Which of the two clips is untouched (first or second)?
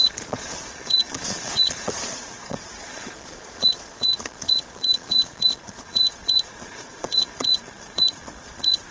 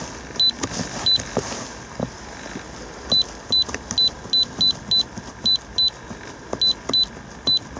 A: second